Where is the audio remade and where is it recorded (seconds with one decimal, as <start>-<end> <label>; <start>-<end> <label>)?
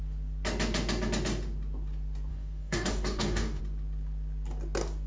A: 0.0-2.3 recorded; 2.3-3.6 remade; 3.6-5.1 recorded